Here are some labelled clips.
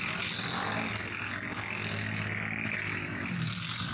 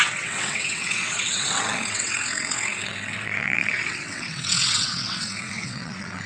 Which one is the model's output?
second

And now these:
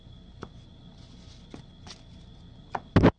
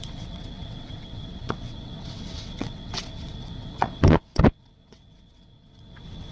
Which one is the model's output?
second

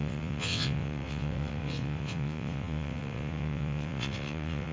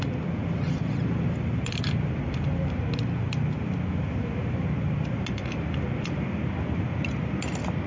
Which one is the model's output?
first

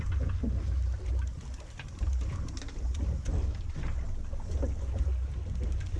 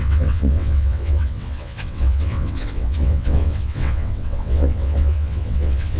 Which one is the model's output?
second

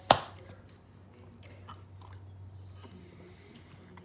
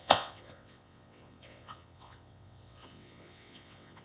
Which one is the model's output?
second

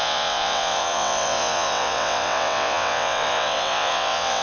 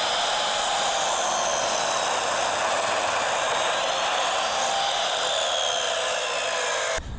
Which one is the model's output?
first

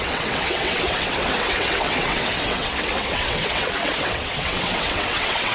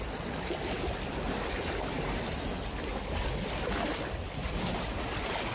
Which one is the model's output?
first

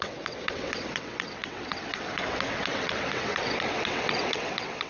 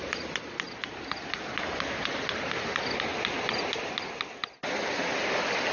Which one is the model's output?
first